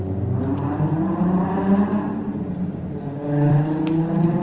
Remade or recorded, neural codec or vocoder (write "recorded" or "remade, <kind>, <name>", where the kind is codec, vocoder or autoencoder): remade, vocoder, BigVGAN v2